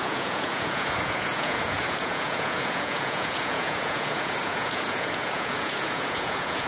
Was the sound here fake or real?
fake